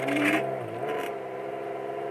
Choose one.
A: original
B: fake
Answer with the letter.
A